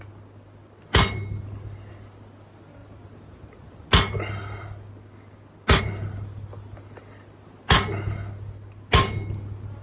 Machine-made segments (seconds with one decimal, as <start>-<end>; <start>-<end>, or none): none